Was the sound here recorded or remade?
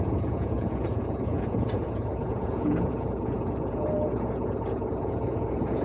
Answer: remade